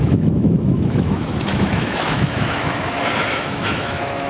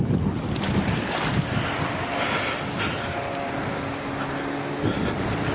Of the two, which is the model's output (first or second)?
first